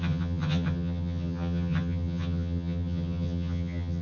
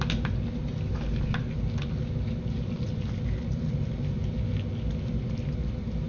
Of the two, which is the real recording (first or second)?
second